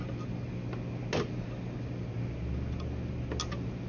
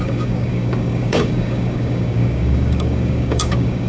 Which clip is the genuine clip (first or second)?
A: first